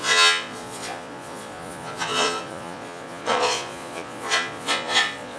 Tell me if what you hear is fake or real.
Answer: fake